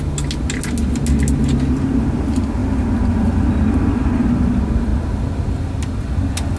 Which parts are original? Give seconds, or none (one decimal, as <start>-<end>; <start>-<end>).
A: 0.0-6.6